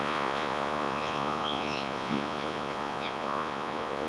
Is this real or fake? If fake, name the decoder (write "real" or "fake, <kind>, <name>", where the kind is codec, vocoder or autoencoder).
fake, vocoder, Vocos